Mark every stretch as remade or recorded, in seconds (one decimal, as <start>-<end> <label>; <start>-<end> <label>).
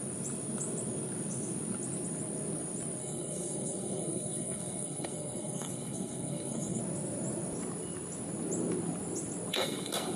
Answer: 0.0-3.0 recorded; 3.0-6.8 remade; 6.8-9.5 recorded; 9.5-10.2 remade